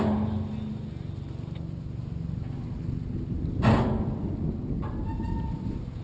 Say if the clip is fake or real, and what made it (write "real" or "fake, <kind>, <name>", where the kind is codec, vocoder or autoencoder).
real